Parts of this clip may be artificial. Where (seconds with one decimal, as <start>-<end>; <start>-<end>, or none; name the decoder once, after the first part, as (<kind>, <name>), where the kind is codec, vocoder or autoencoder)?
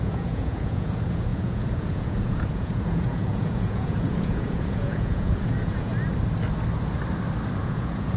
0.0-5.9 (vocoder, Vocos); 7.6-8.2